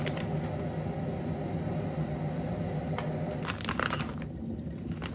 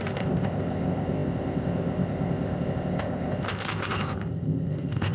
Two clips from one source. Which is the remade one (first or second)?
second